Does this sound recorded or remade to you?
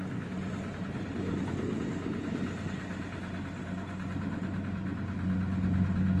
recorded